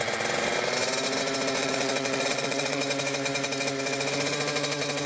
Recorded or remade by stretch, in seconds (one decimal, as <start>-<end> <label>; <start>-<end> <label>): 0.0-1.6 recorded; 1.6-2.8 remade; 2.8-5.1 recorded